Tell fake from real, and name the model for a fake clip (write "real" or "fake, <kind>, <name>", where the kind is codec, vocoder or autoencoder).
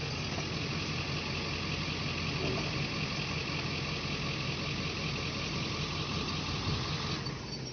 real